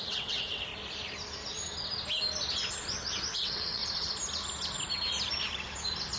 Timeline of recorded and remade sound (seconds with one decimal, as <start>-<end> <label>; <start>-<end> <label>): 0.0-0.7 remade; 0.7-3.3 recorded; 3.3-3.8 remade; 3.8-6.2 recorded